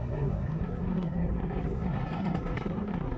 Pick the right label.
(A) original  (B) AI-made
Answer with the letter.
B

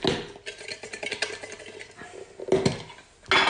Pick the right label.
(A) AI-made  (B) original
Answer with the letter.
B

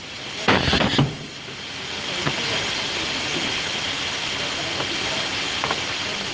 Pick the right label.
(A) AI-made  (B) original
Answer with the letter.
B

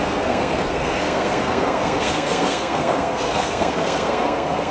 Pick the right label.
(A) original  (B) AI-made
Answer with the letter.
B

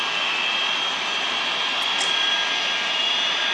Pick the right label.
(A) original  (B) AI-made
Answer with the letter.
A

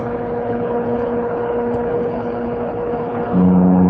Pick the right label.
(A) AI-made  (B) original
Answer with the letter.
A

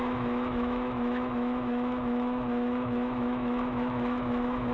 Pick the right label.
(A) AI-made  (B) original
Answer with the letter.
A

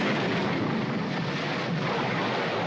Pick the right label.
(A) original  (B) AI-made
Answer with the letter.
A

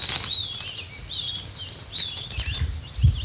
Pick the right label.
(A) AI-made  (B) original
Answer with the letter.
B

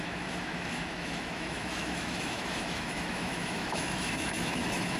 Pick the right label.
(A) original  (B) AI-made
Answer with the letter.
B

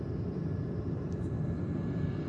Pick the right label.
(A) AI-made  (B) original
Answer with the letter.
B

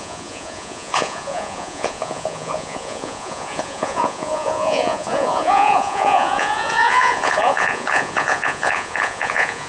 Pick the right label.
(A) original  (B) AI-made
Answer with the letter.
B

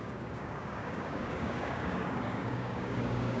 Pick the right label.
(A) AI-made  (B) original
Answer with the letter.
A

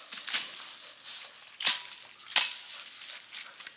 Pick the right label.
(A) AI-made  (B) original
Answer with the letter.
B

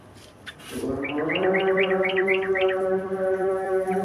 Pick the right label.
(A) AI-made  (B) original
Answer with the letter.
A